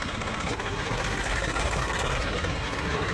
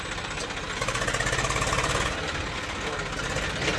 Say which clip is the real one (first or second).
second